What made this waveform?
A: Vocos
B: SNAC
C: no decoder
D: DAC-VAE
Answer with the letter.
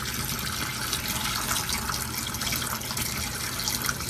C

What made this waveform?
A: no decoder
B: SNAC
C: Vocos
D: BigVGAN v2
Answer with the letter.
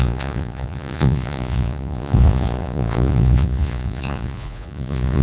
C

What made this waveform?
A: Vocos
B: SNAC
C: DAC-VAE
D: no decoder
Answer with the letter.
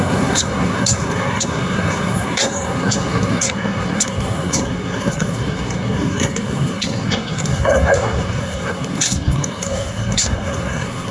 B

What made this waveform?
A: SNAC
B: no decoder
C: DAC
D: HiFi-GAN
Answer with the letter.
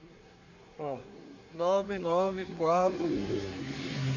A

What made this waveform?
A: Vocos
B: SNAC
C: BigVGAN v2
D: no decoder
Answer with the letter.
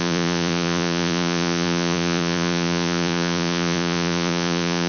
A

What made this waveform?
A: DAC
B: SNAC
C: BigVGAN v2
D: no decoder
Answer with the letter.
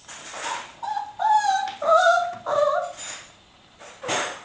D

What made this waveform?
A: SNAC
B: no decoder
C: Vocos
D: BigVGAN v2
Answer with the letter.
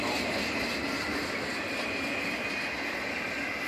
B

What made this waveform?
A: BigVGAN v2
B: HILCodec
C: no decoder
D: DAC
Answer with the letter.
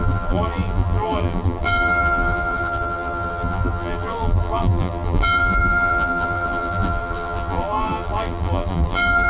A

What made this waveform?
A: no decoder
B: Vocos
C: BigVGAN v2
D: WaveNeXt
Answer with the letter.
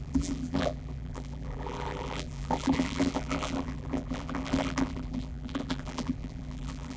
C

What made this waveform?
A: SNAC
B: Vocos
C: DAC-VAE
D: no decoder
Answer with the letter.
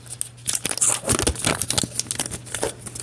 D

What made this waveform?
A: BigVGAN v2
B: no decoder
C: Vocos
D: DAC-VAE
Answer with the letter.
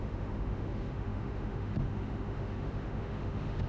D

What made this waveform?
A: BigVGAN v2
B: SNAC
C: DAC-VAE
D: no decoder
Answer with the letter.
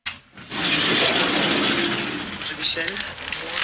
D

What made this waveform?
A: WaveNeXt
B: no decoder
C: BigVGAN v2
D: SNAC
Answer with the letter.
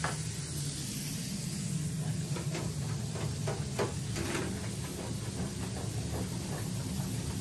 B